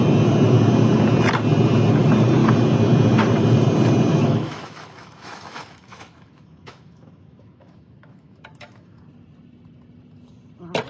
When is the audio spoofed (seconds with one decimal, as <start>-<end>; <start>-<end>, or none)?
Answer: 4.1-9.0